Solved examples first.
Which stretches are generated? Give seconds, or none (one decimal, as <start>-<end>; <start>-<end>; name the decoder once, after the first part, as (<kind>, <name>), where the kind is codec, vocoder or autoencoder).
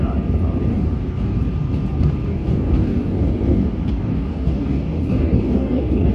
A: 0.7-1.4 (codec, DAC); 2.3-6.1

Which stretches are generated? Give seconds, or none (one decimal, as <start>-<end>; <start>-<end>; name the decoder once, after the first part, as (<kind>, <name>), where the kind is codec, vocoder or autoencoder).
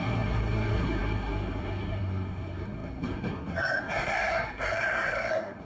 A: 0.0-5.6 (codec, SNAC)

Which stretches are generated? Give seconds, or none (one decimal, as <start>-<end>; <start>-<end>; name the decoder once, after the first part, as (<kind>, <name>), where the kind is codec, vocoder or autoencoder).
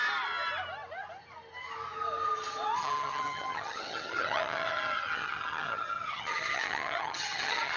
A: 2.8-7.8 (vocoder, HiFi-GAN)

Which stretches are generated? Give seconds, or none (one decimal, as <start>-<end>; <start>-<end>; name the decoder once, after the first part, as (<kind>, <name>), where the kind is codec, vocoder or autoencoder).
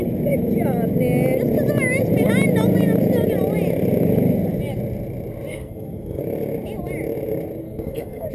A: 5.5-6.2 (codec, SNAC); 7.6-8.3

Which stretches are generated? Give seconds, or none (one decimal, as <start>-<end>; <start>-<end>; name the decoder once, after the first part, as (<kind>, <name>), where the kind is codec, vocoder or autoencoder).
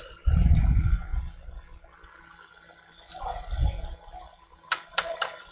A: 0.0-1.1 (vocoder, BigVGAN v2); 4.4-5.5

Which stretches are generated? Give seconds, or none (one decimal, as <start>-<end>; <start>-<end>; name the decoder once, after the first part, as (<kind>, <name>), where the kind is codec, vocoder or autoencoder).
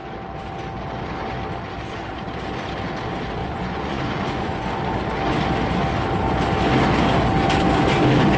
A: 3.4-4.9 (vocoder, Vocos)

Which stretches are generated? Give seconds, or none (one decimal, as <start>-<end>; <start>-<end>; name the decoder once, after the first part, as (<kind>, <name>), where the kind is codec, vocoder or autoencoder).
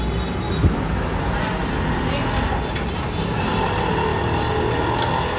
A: none